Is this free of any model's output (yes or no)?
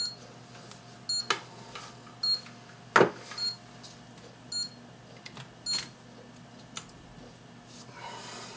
yes